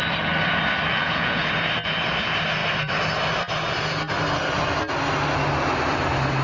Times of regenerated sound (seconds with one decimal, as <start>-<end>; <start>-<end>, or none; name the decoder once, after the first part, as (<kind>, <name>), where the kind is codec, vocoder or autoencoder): 0.9-1.5 (vocoder, Vocos)